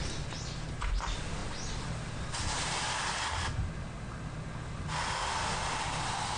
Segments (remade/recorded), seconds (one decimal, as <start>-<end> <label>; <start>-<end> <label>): 0.0-6.4 recorded

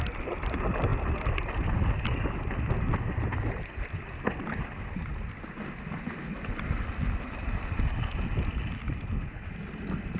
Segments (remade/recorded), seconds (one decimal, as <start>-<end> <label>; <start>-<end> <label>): 0.0-10.2 recorded

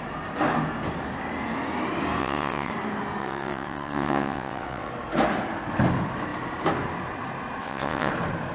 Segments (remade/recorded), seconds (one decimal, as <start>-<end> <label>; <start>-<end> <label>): 0.0-2.2 recorded; 2.2-2.7 remade; 2.7-3.2 recorded; 3.2-4.9 remade; 4.9-7.6 recorded; 7.6-8.1 remade; 8.1-8.5 recorded

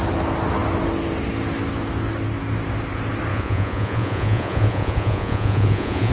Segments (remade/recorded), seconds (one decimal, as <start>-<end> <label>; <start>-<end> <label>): 0.0-3.3 recorded; 3.3-6.1 remade

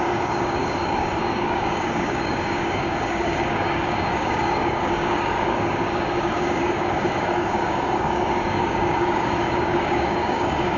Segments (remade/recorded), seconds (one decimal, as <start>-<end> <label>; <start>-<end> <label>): 0.0-10.8 remade

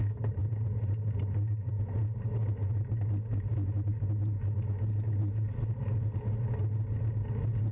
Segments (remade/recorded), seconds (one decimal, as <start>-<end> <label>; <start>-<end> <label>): 0.0-7.7 recorded

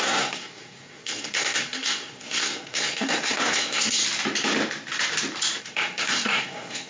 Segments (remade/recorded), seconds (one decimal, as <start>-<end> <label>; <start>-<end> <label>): 0.0-4.0 remade; 4.0-5.6 recorded; 5.6-6.9 remade

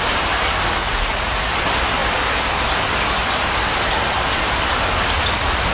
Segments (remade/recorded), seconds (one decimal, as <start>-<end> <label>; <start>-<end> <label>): 0.0-0.8 recorded; 0.8-1.5 remade; 1.5-5.7 recorded